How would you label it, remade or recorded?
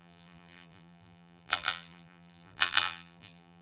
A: remade